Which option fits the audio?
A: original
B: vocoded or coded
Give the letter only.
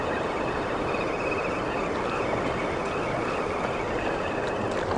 A